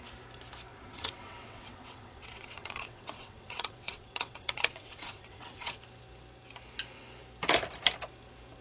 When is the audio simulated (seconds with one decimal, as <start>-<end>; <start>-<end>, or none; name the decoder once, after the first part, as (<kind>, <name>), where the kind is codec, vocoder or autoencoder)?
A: 0.7-5.8 (vocoder, WaveNeXt)